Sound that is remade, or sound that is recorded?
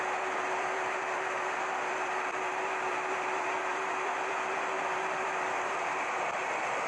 remade